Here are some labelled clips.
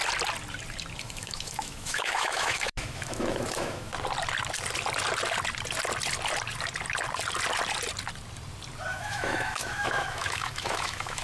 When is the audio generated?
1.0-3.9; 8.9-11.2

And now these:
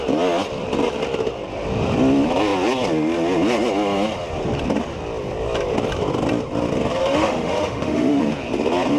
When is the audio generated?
7.0-8.2